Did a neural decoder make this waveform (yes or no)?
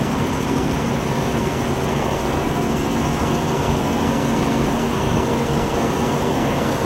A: yes